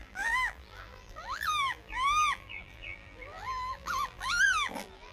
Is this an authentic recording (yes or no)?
no